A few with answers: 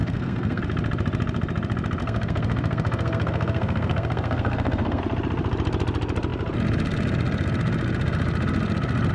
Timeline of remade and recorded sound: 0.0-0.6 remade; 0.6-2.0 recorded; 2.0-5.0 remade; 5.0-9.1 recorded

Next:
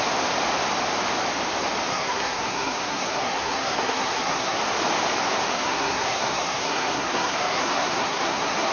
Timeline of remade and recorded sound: 0.0-1.9 recorded; 1.9-4.6 remade; 4.6-5.5 recorded; 5.5-8.7 remade

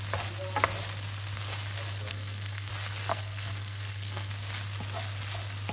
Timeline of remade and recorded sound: 0.0-2.1 recorded; 2.1-2.7 remade; 2.7-3.1 recorded; 3.1-4.3 remade; 4.3-5.7 recorded

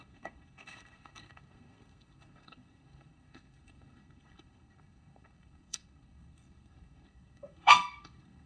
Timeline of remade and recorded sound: 0.0-8.5 remade

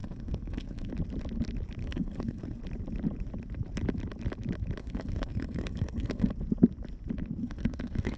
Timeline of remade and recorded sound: 0.0-0.9 remade; 0.9-1.8 recorded; 1.8-2.6 remade; 2.6-4.8 recorded; 4.8-6.3 remade; 6.3-7.4 recorded; 7.4-8.2 remade

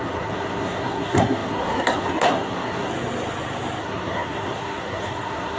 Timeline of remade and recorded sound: 0.0-2.9 remade; 2.9-3.8 recorded; 3.8-5.6 remade

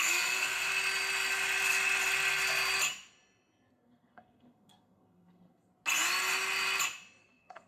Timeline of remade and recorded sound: 0.0-0.7 remade; 0.7-3.7 recorded; 3.7-5.7 remade; 5.7-7.2 recorded; 7.2-7.7 remade

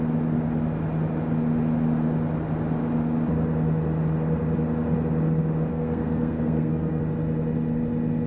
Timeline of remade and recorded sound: 0.0-5.7 recorded; 5.7-7.0 remade; 7.0-8.3 recorded